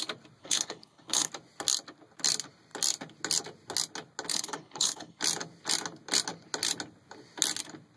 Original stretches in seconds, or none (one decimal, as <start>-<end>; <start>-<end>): 0.0-0.4; 1.3-4.3; 5.2-8.0

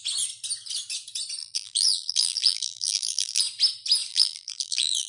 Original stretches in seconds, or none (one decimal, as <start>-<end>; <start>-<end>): 0.0-1.4; 3.4-4.1

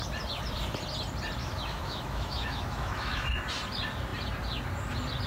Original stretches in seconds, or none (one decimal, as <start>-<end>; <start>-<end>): 0.0-1.4; 3.3-5.3

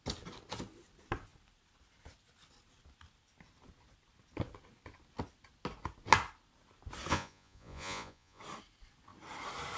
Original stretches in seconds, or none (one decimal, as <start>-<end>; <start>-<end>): 0.0-7.1; 8.4-9.8

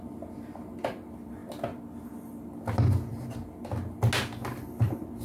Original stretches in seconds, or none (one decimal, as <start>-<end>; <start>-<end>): 0.0-5.2

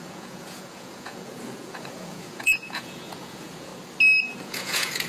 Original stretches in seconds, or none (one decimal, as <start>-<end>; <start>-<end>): 3.7-4.4